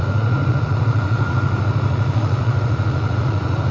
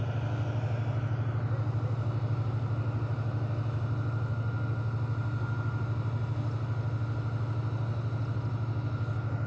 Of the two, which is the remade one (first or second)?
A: first